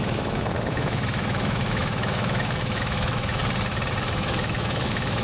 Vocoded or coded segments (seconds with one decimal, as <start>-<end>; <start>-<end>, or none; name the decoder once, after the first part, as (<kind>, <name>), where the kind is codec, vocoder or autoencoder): 0.0-3.4 (autoencoder, DAC-VAE); 4.1-5.2